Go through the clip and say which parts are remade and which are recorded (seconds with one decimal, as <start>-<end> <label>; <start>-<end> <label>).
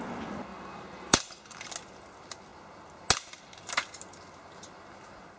0.0-0.5 recorded; 0.5-1.7 remade; 1.7-5.4 recorded